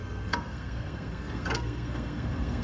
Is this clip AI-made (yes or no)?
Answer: yes